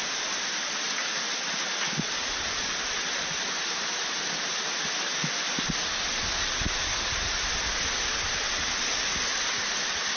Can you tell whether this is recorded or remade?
recorded